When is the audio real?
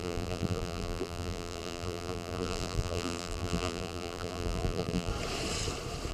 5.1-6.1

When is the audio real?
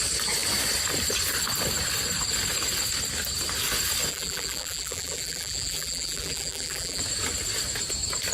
0.0-4.1; 7.0-8.3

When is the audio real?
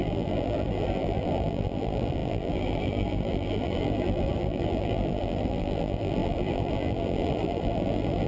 none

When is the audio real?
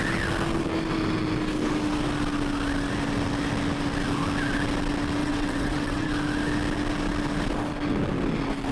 0.0-5.2; 6.1-8.7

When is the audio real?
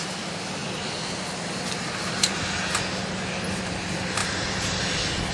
0.0-4.2; 4.8-5.3